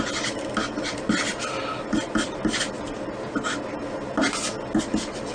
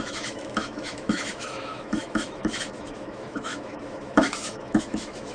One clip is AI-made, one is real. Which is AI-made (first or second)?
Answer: second